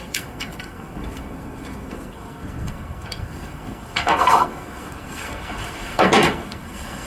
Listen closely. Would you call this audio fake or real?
fake